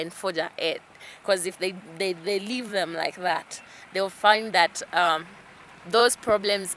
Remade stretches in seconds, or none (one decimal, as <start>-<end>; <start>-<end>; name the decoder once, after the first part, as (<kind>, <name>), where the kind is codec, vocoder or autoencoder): 1.5-5.6 (vocoder, BigVGAN v2); 6.0-6.8